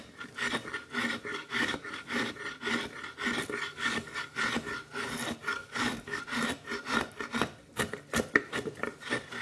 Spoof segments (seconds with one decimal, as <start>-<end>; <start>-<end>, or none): 1.3-2.3; 3.7-4.4; 5.6-6.2